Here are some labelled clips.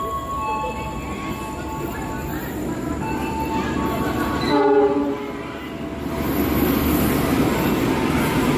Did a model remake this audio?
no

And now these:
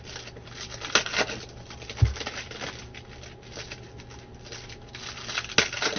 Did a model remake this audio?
no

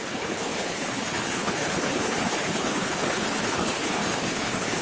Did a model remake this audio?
yes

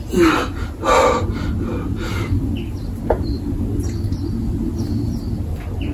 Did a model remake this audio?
no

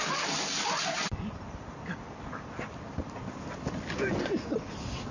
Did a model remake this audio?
no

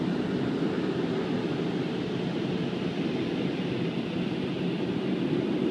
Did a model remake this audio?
no